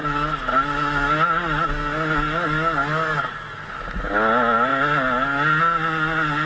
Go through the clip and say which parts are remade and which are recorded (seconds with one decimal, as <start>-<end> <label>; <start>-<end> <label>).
0.0-6.5 recorded

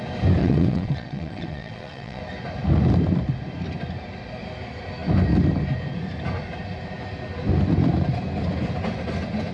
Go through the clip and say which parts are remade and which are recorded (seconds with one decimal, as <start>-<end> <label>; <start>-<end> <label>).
0.0-0.4 recorded; 0.4-2.2 remade; 2.2-9.5 recorded